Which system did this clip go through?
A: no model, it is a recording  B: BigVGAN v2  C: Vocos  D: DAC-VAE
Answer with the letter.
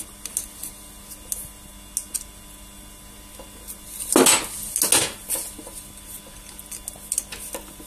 A